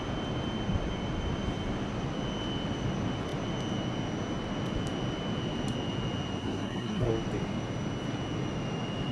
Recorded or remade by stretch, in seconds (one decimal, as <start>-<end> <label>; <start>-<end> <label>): 0.0-6.4 recorded; 6.4-7.1 remade; 7.1-9.1 recorded